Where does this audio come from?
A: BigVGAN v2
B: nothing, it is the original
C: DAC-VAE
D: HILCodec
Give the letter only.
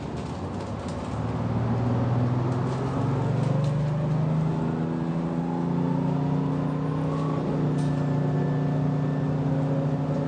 B